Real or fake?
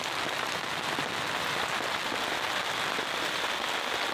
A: real